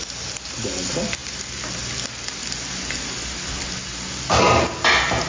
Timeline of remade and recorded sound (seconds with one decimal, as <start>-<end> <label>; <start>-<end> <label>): 0.0-5.3 recorded